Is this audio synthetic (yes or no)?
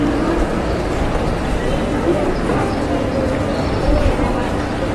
no